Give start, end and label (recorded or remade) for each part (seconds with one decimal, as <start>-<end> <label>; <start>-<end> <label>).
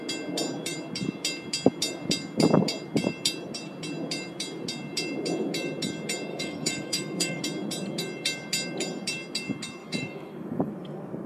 0.0-6.3 recorded; 6.3-7.4 remade; 7.4-9.8 recorded; 9.8-10.7 remade; 10.7-11.3 recorded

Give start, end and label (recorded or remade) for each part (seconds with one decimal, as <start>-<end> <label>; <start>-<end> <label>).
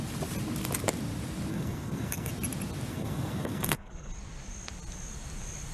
0.0-1.5 recorded; 1.5-2.3 remade; 2.3-2.9 recorded; 2.9-4.1 remade; 4.1-5.7 recorded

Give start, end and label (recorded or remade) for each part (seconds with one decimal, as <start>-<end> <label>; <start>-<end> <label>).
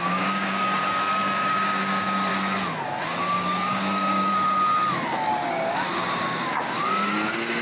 0.0-2.3 remade; 2.3-3.0 recorded; 3.0-4.3 remade; 4.3-5.5 recorded; 5.5-7.6 remade